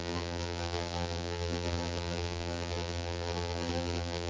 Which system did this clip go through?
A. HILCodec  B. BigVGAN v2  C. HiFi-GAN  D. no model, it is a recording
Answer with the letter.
B